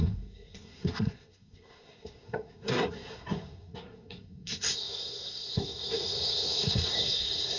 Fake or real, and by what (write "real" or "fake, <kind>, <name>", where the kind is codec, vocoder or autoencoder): fake, codec, SNAC